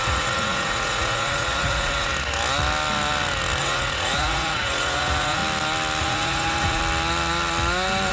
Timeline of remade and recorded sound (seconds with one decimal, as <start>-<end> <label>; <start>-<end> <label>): 0.0-2.1 remade; 2.1-3.6 recorded; 3.6-5.4 remade; 5.4-6.0 recorded; 6.0-6.8 remade; 6.8-8.1 recorded